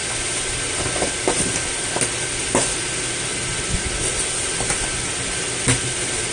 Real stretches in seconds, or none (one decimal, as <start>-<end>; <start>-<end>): 0.0-6.3